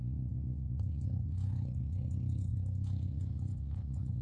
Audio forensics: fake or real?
fake